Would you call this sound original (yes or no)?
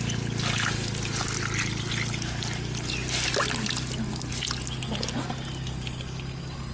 yes